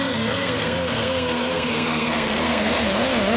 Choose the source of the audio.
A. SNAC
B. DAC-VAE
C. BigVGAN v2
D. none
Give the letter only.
A